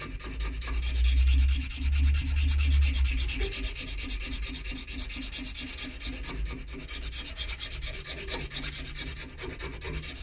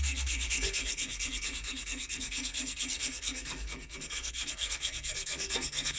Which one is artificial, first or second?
second